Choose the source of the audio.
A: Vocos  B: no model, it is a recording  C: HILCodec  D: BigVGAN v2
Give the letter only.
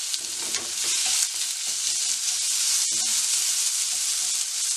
B